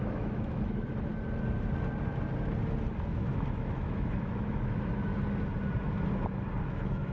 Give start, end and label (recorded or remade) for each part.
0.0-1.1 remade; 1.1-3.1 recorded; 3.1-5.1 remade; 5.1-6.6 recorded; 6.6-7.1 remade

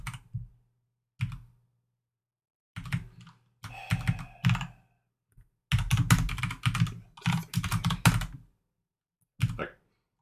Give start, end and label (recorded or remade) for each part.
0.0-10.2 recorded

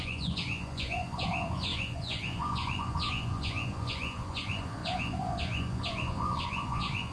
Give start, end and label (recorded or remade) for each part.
0.0-7.1 remade

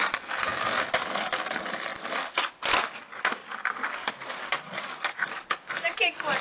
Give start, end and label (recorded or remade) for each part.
0.0-6.4 recorded

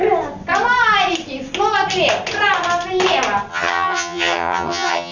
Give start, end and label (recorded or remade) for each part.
0.0-3.5 recorded; 3.5-5.1 remade

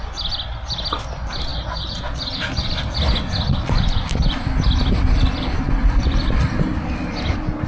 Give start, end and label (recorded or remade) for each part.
0.0-7.7 recorded

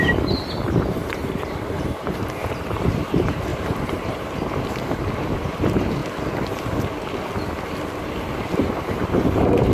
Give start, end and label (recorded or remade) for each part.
0.0-6.0 remade; 6.0-8.6 recorded; 8.6-9.7 remade

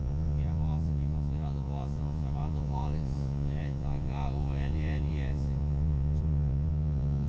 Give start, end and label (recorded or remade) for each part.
0.0-7.3 remade